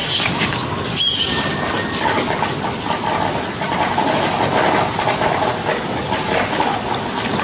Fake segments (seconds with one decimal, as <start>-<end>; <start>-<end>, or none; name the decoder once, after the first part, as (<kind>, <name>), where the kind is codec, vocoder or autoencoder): none